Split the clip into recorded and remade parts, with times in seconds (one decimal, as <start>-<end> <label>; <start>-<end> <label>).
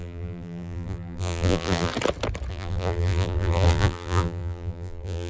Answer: 0.0-1.9 remade; 1.9-2.5 recorded; 2.5-5.3 remade